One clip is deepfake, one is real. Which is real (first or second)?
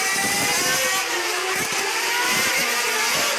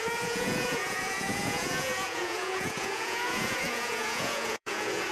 first